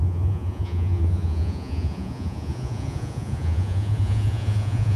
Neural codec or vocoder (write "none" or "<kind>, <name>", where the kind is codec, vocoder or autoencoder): vocoder, Vocos